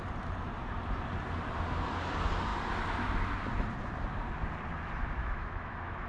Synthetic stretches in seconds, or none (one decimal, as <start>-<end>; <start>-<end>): 5.2-6.1